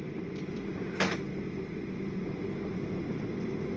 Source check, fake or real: real